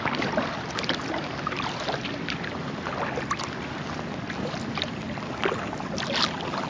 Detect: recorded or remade recorded